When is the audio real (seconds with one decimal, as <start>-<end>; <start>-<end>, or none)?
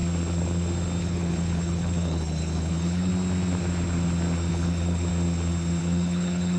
0.0-1.0; 3.1-4.5; 5.1-5.8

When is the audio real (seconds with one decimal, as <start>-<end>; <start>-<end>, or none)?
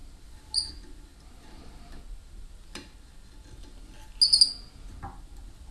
0.0-5.7